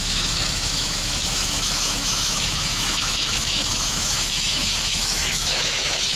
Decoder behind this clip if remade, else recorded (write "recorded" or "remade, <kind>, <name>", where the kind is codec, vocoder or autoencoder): remade, autoencoder, DAC-VAE